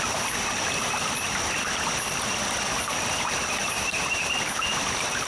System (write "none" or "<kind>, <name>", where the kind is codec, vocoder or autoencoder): none